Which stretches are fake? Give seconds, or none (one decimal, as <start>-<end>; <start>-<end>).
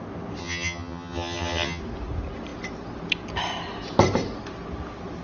0.4-1.8